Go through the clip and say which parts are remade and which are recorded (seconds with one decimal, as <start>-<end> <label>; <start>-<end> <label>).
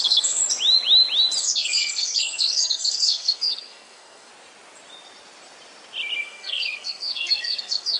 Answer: 0.0-0.4 remade; 0.4-1.4 recorded; 1.4-4.3 remade; 4.3-6.2 recorded; 6.2-8.0 remade